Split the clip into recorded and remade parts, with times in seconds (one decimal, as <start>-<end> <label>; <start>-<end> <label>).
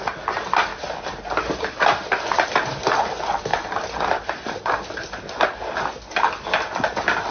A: 0.0-7.3 recorded